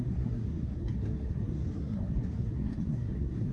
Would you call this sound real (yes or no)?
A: no